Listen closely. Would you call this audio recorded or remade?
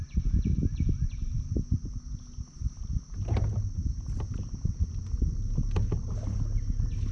recorded